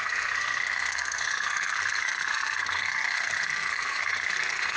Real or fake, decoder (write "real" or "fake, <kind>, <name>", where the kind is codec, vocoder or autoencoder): fake, codec, SNAC